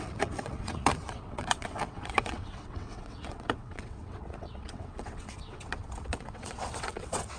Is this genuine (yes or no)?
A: no